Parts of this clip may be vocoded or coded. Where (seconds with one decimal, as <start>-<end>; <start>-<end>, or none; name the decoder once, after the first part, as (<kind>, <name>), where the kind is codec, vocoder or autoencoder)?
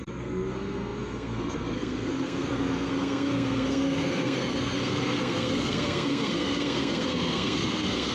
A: 0.0-8.1 (codec, SNAC)